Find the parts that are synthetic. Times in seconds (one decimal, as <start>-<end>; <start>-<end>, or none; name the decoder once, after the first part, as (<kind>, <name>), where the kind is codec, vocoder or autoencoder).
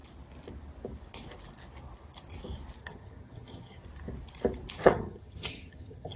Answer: 2.8-3.8 (vocoder, HiFi-GAN); 4.8-6.2